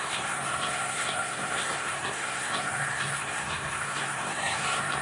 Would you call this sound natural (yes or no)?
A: no